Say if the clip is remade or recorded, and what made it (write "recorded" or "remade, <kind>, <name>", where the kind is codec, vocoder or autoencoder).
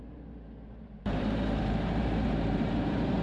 remade, vocoder, BigVGAN v2